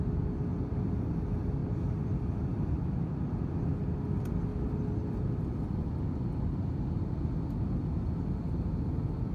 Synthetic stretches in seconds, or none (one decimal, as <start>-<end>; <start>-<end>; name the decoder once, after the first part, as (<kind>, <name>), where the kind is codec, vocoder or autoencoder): 4.5-7.4 (vocoder, BigVGAN v2)